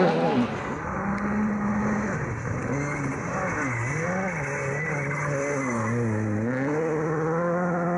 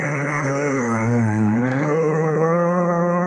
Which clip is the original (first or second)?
first